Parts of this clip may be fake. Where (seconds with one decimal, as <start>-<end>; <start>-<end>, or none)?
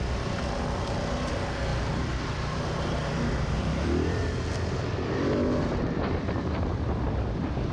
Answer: 3.0-7.7